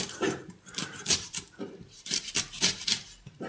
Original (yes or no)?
no